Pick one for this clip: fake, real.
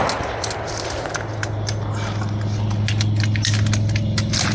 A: real